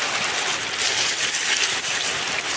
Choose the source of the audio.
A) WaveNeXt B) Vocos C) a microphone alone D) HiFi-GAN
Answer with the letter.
C